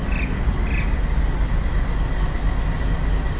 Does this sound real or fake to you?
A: real